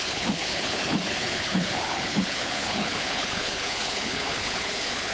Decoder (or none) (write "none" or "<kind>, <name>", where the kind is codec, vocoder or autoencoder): codec, HILCodec